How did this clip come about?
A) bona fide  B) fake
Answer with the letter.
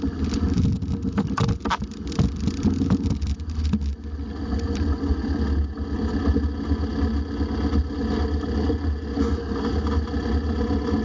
A